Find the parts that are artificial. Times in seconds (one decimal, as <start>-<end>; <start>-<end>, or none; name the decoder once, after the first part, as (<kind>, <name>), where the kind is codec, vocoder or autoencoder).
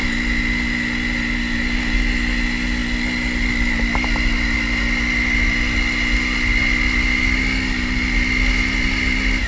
none